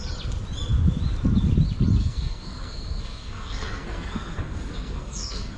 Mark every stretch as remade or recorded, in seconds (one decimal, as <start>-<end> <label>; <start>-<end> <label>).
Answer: 0.0-2.0 recorded; 2.0-5.6 remade